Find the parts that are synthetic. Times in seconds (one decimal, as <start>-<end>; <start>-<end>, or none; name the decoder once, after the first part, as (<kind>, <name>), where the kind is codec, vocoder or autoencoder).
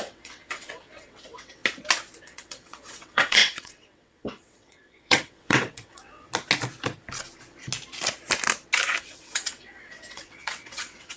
0.0-1.6 (vocoder, WaveNeXt); 2.2-6.3; 9.0-11.2